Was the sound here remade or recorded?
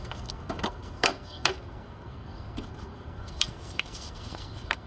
remade